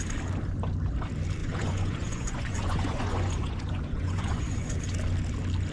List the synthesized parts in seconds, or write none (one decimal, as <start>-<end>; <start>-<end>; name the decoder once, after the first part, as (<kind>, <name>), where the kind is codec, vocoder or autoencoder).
1.4-4.8 (vocoder, Vocos)